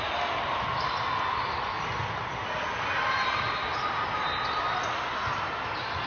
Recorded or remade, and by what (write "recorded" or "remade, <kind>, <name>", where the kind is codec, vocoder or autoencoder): recorded